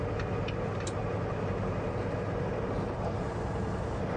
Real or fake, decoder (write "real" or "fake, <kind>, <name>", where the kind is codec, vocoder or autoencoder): real